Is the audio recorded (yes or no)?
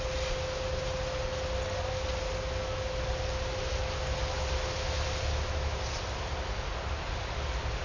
yes